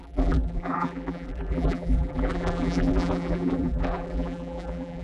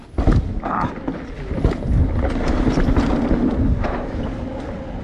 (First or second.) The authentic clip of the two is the second